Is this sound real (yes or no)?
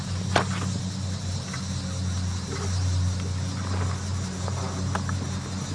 yes